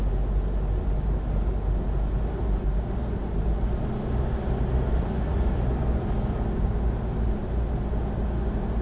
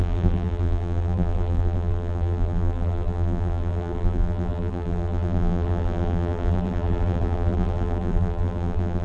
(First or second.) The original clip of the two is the first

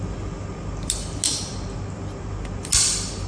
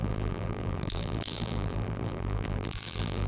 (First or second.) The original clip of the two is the first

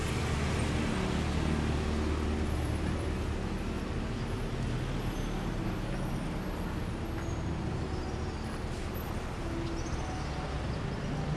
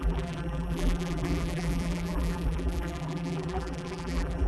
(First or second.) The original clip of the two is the first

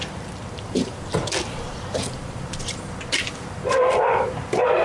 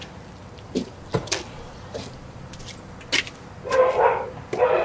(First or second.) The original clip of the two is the second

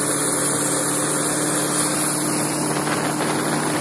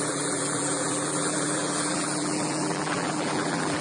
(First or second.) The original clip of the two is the first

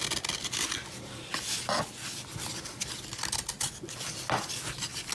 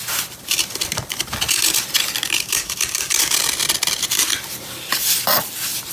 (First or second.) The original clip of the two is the first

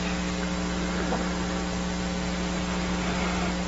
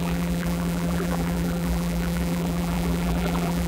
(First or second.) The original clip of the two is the first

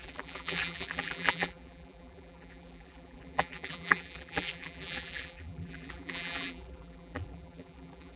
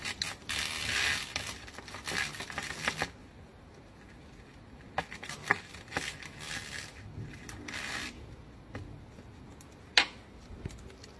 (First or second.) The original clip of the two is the second